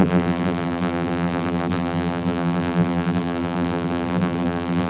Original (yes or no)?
no